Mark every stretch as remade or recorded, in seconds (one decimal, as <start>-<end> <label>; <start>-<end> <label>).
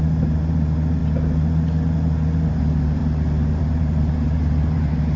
0.0-1.0 remade; 1.0-2.5 recorded; 2.5-3.0 remade; 3.0-3.6 recorded; 3.6-5.2 remade